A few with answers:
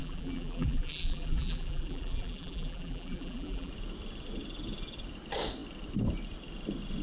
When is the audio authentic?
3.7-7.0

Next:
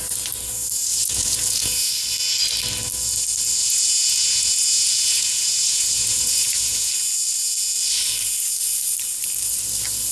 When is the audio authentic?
0.0-0.9; 1.9-3.6; 6.9-10.1

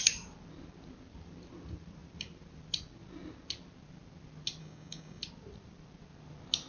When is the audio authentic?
0.0-4.6; 5.2-6.7

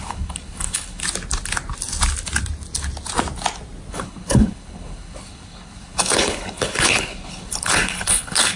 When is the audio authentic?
1.0-3.9